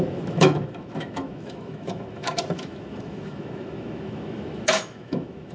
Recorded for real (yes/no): no